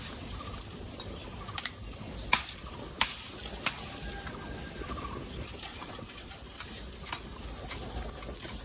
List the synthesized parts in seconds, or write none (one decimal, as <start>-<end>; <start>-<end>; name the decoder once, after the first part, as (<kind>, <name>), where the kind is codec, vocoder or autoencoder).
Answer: 5.7-6.3 (vocoder, WaveNeXt)